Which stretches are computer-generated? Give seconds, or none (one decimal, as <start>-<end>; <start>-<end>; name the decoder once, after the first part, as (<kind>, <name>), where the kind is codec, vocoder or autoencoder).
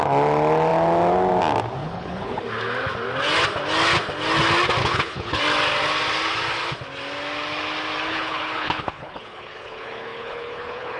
1.8-2.4 (codec, HILCodec); 4.8-5.4; 8.1-11.0